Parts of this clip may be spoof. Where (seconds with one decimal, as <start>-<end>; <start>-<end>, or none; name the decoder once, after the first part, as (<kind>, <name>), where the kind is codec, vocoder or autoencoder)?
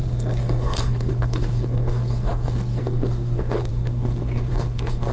0.0-5.1 (codec, SNAC)